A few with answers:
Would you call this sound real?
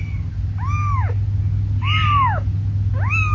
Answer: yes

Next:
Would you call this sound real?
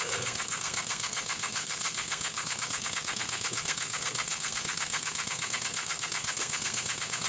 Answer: no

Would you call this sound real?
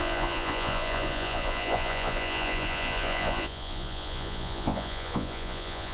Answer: no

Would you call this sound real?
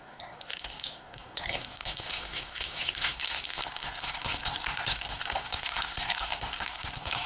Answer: no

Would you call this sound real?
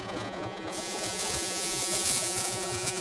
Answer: no